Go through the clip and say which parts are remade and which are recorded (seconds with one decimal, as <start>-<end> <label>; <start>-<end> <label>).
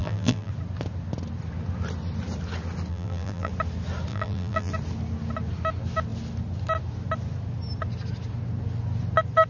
0.0-0.5 remade; 0.5-2.9 recorded; 2.9-3.5 remade; 3.5-4.1 recorded; 4.1-4.7 remade; 4.7-9.5 recorded